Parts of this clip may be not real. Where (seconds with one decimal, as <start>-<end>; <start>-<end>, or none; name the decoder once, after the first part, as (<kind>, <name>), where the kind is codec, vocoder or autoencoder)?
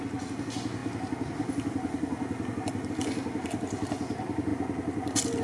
none